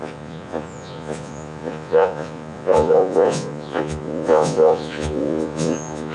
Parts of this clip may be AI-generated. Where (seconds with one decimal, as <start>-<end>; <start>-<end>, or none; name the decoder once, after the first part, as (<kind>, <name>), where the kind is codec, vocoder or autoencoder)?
0.0-6.1 (vocoder, Vocos)